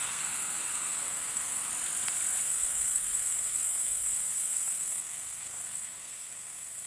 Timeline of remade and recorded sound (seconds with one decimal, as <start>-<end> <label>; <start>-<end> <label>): 0.0-1.7 remade; 1.7-2.4 recorded; 2.4-6.9 remade